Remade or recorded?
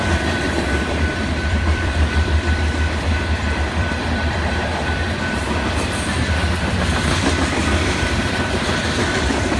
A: remade